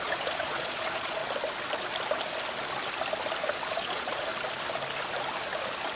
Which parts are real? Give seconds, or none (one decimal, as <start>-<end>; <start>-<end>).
1.2-3.7; 4.3-6.0